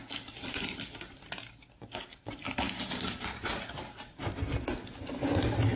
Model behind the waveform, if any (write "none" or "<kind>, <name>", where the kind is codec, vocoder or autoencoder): none